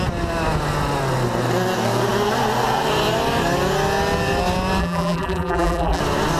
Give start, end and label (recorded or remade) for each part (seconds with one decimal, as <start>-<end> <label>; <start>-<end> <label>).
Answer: 0.0-4.8 recorded; 4.8-6.0 remade; 6.0-6.4 recorded